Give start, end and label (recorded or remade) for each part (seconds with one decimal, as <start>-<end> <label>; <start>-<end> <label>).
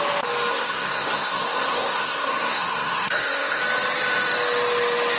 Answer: 0.0-0.5 recorded; 0.5-3.6 remade; 3.6-5.2 recorded